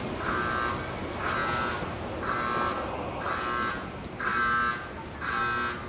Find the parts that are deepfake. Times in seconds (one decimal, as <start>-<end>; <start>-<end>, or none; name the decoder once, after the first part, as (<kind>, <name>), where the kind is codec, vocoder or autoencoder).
none